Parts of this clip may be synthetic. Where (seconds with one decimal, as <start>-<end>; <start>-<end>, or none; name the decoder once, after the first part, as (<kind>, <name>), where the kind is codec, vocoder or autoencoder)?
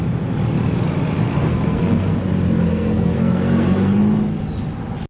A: 1.5-2.2 (codec, SNAC); 2.7-4.0